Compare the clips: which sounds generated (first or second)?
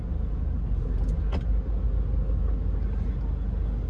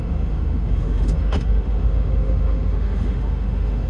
second